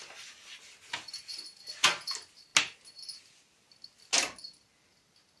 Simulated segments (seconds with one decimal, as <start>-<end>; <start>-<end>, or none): none